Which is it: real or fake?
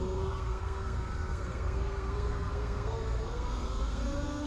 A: fake